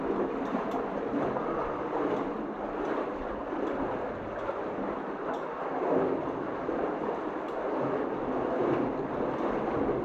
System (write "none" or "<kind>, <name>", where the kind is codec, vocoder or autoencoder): none